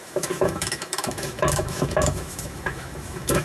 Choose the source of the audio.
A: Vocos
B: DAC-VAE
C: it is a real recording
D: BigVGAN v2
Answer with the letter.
B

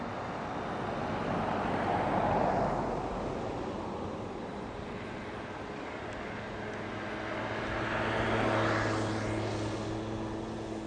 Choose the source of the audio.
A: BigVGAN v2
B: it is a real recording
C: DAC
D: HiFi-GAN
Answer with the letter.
B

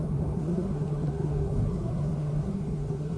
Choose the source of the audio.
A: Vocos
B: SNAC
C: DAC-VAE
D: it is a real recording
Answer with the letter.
B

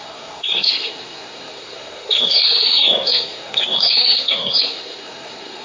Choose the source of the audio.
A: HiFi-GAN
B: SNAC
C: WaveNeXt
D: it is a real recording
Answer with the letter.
B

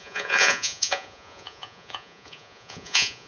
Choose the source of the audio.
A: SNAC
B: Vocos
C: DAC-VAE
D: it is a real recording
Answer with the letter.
B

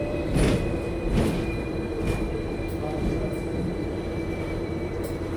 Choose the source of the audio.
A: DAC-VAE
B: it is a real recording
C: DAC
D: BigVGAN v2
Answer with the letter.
D